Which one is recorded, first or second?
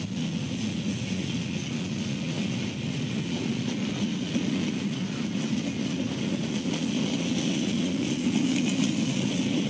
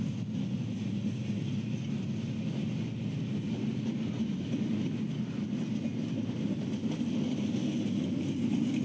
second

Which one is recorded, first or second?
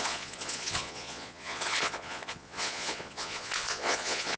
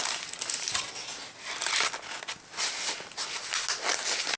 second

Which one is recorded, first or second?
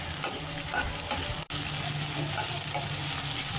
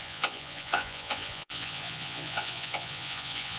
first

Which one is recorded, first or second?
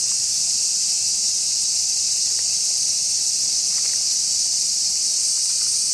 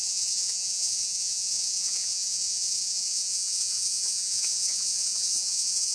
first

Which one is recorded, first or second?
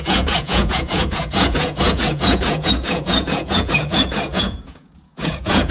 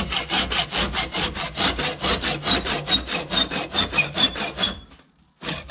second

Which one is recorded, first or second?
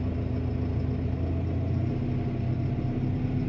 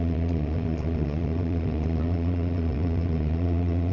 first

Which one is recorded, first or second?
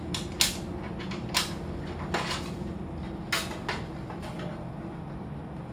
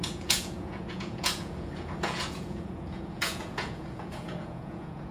first